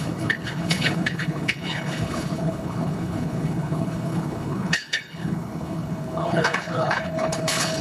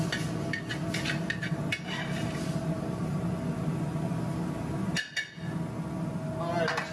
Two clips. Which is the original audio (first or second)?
second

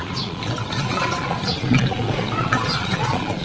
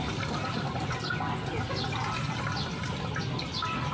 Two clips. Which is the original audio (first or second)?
second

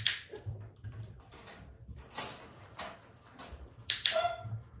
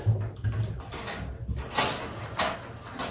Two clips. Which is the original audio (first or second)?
second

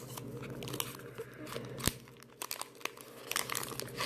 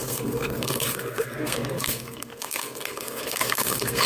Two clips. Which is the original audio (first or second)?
first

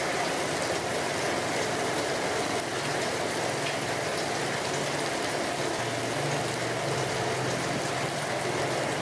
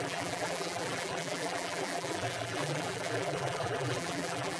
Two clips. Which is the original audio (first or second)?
first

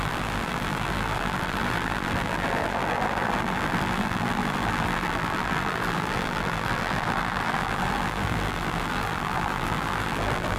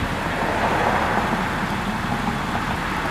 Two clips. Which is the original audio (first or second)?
second